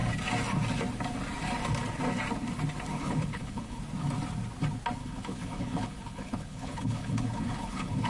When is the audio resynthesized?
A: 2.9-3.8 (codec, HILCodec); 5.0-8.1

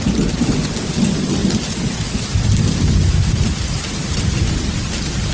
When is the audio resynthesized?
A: none

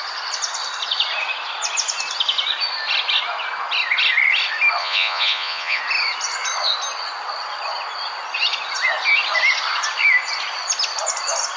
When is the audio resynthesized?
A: 4.8-5.8 (vocoder, Vocos)